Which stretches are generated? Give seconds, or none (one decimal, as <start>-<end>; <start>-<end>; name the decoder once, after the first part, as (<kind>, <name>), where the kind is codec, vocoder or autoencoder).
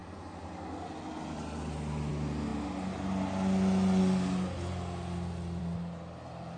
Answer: none